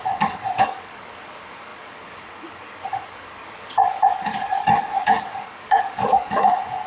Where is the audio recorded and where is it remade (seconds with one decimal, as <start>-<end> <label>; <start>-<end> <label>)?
0.0-6.9 remade